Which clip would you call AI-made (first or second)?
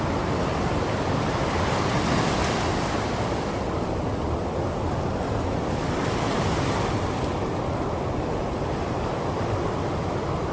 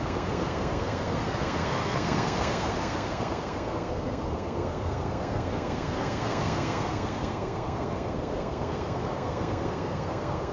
second